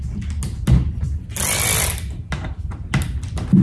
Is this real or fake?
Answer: real